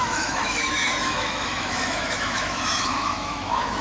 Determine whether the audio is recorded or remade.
remade